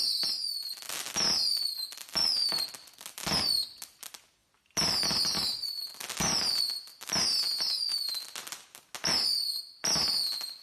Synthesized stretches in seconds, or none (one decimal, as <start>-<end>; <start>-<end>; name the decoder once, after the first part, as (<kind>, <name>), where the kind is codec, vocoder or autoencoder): none